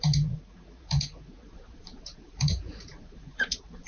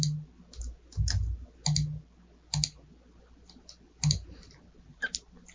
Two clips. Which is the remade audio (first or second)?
first